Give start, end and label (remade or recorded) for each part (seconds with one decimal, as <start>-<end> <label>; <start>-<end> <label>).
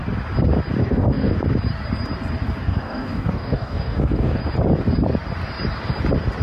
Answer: 0.0-0.8 recorded; 0.8-1.4 remade; 1.4-2.6 recorded; 2.6-4.4 remade; 4.4-6.4 recorded